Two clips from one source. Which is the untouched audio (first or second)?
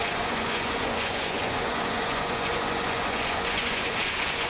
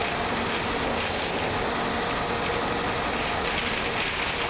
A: second